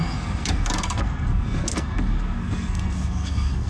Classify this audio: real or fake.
fake